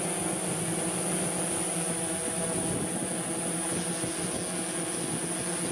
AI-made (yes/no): no